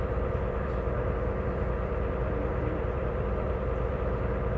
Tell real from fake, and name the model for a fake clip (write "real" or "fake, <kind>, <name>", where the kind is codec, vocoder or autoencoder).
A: fake, vocoder, BigVGAN v2